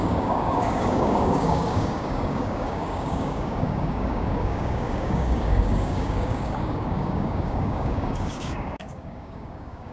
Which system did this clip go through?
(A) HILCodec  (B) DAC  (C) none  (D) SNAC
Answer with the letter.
B